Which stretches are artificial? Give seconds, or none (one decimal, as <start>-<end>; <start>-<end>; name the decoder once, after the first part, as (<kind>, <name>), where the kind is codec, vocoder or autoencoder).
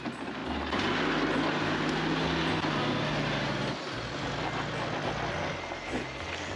none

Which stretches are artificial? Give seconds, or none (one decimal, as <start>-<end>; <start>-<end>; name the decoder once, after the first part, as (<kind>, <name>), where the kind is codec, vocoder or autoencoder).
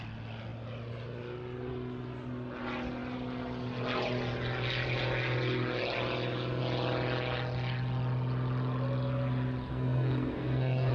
9.7-10.9 (codec, SNAC)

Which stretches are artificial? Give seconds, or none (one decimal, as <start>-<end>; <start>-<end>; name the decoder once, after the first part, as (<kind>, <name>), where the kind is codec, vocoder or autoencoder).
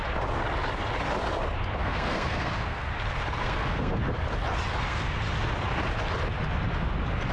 1.8-2.9 (codec, SNAC); 3.4-4.0; 4.8-5.2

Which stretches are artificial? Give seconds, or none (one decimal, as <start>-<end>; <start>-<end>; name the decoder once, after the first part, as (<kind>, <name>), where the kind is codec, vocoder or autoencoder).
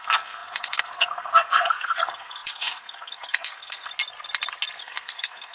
0.0-3.9 (codec, SNAC); 4.8-5.5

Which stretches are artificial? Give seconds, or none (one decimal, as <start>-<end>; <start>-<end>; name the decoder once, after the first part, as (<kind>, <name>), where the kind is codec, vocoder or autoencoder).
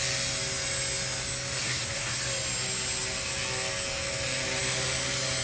1.6-2.2 (codec, SNAC)